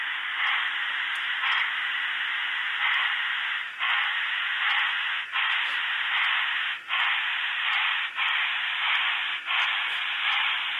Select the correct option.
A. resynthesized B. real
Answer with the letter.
B